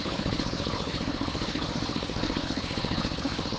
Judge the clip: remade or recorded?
remade